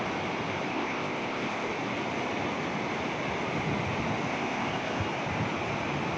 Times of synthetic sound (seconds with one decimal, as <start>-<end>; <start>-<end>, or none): 0.7-1.7; 4.3-5.0